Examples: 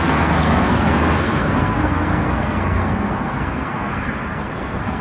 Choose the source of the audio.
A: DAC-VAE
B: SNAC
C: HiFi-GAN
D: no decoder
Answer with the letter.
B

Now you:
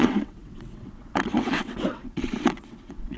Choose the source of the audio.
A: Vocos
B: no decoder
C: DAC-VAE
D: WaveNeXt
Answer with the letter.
D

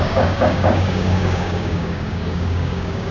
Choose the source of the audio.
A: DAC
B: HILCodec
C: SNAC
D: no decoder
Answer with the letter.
A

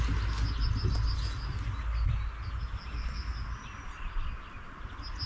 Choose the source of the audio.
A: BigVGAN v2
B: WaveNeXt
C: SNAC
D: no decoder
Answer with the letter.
D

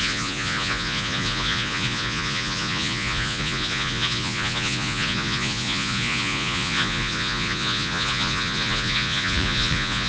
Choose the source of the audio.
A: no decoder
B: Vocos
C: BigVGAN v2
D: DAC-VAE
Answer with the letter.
B